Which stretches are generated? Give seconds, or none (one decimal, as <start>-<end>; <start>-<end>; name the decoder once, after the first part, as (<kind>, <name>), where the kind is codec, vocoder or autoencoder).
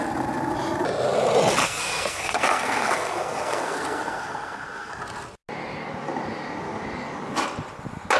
1.6-5.0 (codec, SNAC)